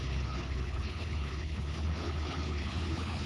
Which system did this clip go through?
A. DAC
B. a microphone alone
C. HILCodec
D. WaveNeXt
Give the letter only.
C